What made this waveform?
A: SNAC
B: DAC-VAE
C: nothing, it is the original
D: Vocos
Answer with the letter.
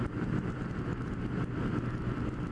C